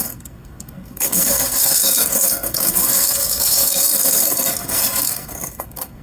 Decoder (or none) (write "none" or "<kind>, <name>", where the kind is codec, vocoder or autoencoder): codec, SNAC